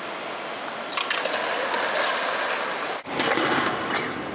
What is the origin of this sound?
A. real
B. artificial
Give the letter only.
A